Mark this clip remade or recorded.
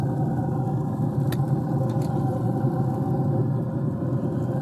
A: recorded